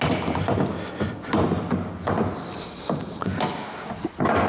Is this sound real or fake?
real